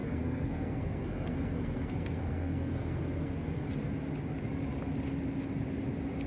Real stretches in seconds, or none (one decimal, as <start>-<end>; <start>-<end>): 3.7-6.3